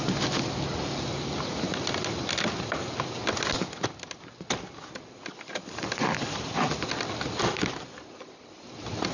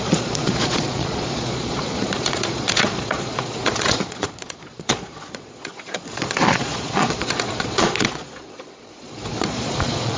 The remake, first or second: second